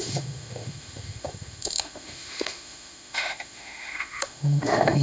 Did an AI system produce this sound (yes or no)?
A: yes